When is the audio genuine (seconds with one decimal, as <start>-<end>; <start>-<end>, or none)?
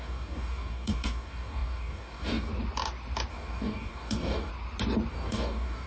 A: 2.5-3.3; 4.5-5.1